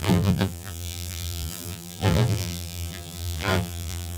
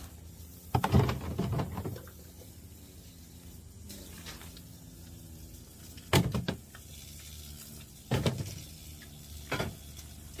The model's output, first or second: first